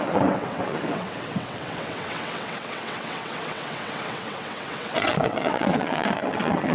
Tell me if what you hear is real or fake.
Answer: fake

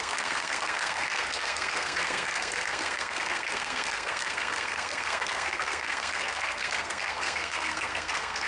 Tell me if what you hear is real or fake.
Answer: fake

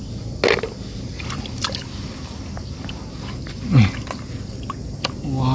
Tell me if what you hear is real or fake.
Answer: real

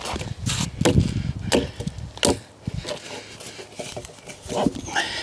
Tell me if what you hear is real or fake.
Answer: real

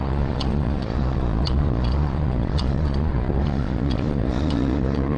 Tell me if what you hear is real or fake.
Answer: fake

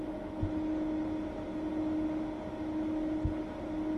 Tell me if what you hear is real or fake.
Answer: real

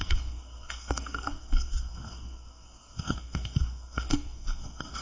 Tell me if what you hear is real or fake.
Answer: fake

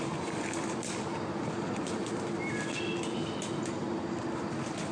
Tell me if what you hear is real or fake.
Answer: real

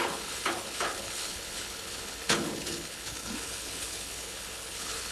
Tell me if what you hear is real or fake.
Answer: fake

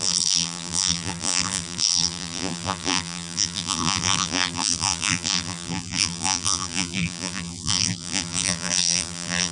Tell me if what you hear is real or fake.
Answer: fake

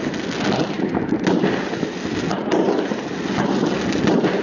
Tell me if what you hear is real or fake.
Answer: real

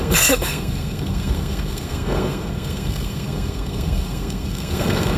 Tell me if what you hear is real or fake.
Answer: fake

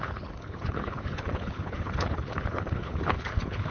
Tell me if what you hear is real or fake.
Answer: fake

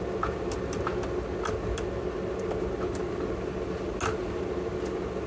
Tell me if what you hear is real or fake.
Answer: real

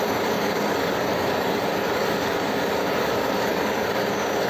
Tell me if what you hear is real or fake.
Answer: fake